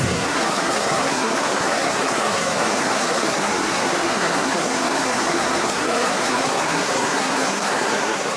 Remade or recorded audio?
remade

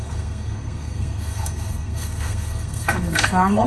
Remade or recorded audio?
remade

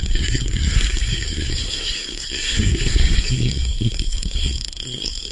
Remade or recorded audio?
remade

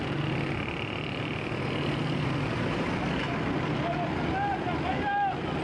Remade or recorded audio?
recorded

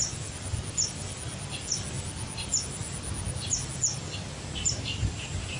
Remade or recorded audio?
recorded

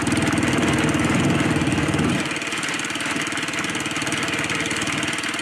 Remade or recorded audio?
recorded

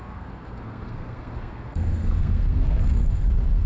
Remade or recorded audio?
remade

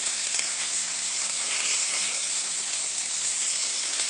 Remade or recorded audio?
remade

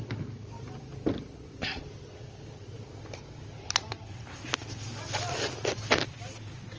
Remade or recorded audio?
recorded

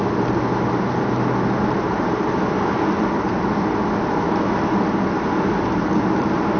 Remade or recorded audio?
recorded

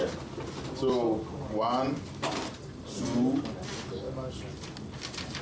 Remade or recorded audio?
recorded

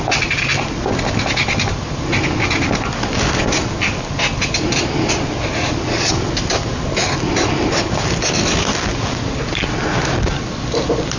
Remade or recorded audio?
recorded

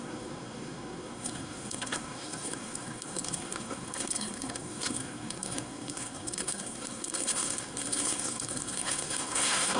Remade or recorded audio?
remade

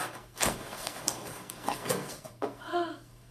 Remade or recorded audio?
remade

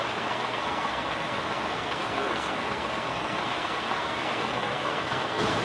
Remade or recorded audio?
remade